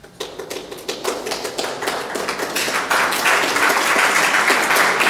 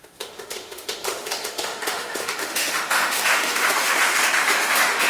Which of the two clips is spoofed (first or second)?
second